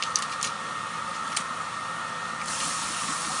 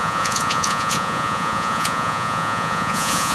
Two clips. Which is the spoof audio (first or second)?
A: second